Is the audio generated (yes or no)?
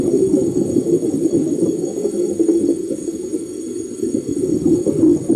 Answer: yes